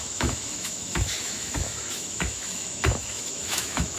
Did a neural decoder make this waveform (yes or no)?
yes